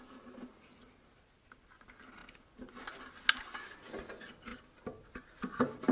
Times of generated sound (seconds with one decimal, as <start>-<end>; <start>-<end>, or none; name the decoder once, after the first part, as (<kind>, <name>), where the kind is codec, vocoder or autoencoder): 2.2-2.7 (vocoder, BigVGAN v2)